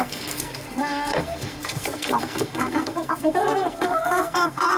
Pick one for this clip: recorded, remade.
remade